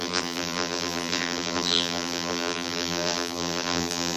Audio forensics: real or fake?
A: fake